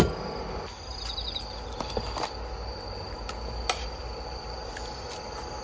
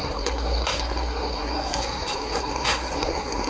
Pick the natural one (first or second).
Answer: first